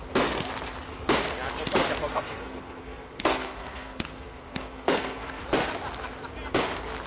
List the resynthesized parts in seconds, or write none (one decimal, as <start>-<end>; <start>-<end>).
2.1-5.4